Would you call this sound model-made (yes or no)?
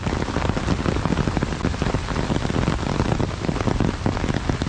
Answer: no